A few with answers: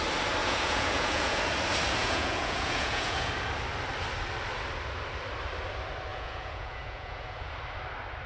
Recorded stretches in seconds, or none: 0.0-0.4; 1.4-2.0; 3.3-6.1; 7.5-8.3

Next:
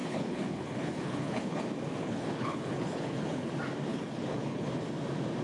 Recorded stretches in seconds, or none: 1.6-2.0; 3.5-3.9; 4.7-5.4

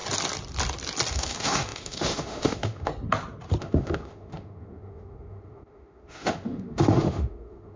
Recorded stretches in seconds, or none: 0.0-1.1; 2.9-3.6

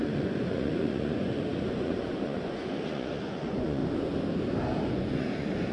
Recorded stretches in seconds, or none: 3.8-4.9

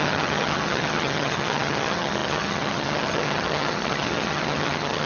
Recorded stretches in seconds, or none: none

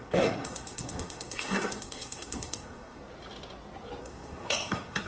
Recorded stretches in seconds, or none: 3.0-4.0

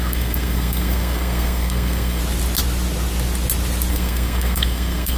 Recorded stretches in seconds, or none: 2.2-3.9

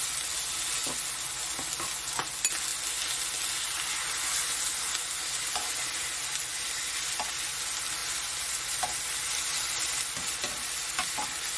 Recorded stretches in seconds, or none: 0.0-11.6